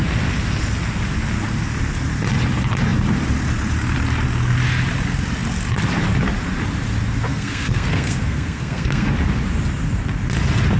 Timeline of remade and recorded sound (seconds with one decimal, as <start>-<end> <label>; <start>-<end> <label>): 0.0-7.3 recorded; 7.3-9.1 remade; 9.1-10.8 recorded